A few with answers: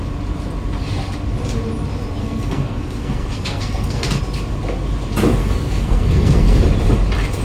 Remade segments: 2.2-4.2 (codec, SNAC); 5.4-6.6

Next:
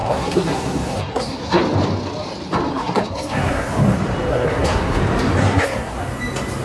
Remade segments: 0.0-1.6 (codec, SNAC); 2.7-3.7; 4.3-5.0; 5.4-6.0

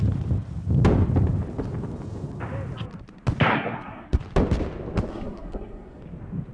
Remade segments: 3.5-4.2 (codec, SNAC); 5.1-6.0

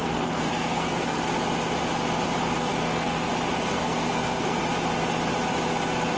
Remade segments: 0.0-1.2 (codec, SNAC); 2.7-3.3; 3.7-4.6

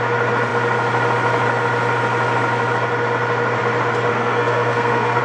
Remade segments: 4.1-5.2 (codec, SNAC)

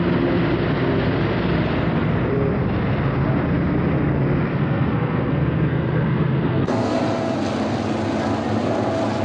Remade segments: 4.5-7.0 (codec, SNAC)